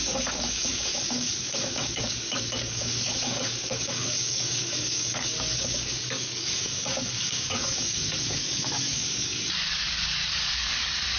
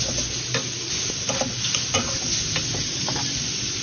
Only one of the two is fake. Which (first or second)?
first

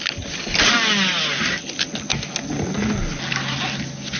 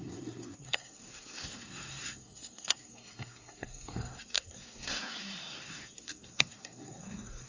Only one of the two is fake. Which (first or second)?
second